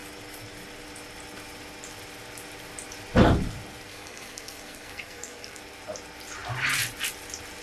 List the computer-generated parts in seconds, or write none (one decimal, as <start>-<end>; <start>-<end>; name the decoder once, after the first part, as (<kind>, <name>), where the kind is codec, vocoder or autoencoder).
3.9-5.6 (codec, SNAC)